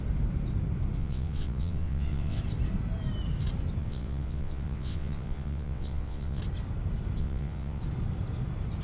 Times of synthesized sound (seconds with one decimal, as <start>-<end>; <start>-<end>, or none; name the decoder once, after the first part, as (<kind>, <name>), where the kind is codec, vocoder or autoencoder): 1.0-2.4 (vocoder, WaveNeXt); 3.8-6.4; 7.2-7.8